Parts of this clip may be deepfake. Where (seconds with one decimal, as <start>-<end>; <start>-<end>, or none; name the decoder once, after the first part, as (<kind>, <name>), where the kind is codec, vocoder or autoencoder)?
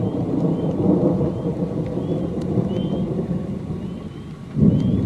none